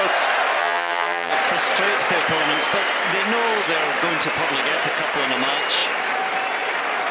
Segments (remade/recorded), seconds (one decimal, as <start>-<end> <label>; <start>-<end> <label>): 0.0-0.6 recorded; 0.6-1.3 remade; 1.3-7.1 recorded